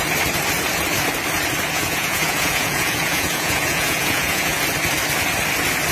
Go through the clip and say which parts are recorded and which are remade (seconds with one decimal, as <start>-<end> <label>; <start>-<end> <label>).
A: 0.0-1.7 recorded; 1.7-4.6 remade; 4.6-5.9 recorded